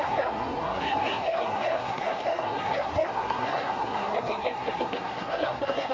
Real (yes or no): no